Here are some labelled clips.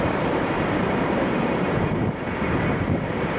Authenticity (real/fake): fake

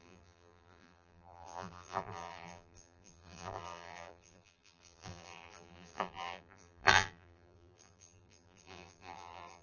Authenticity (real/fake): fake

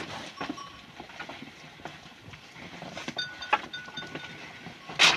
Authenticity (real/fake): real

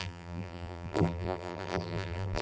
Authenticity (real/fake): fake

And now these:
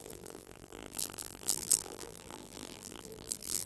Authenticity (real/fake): fake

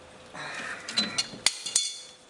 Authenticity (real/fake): real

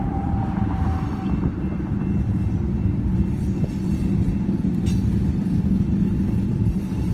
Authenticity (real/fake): real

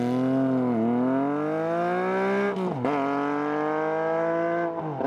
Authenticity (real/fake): real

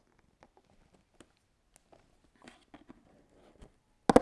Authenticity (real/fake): real